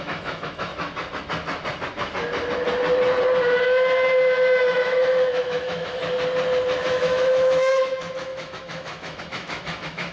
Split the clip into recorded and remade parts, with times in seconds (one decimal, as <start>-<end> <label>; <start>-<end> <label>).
0.0-0.7 remade; 0.7-4.6 recorded; 4.6-6.0 remade; 6.0-6.8 recorded; 6.8-10.1 remade